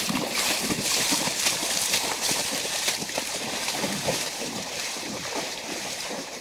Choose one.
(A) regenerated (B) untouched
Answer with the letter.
A